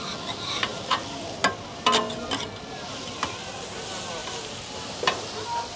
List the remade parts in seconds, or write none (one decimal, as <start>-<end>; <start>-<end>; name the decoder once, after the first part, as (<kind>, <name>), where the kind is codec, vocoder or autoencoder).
none